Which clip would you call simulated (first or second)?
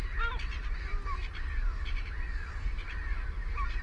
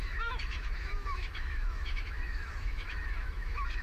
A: second